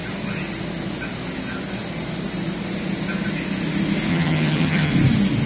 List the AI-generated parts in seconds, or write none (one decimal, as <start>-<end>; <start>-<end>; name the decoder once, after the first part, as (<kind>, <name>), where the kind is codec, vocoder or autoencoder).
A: 4.1-4.9 (vocoder, HiFi-GAN)